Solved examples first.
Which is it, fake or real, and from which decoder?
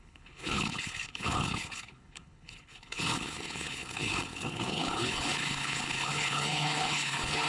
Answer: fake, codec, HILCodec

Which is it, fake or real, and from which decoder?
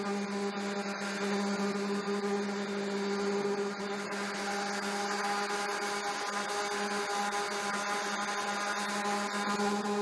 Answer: real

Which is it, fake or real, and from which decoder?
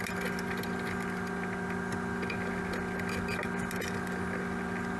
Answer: real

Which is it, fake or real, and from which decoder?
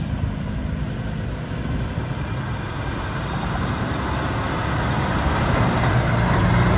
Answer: real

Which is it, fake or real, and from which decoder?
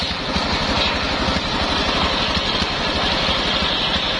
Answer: real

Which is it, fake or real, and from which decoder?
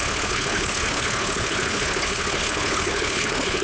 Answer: fake, codec, HILCodec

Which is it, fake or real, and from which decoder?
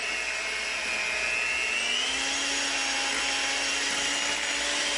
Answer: real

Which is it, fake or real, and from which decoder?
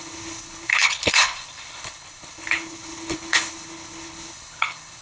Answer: fake, codec, HILCodec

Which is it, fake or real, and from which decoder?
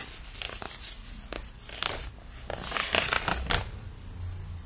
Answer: real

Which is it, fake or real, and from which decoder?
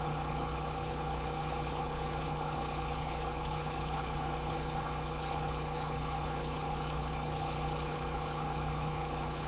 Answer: fake, codec, HILCodec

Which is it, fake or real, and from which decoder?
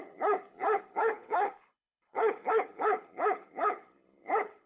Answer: fake, codec, HILCodec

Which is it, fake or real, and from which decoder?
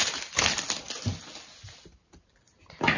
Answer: real